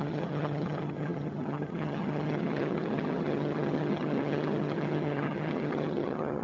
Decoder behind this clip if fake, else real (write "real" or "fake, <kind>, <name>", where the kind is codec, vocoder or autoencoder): fake, vocoder, HiFi-GAN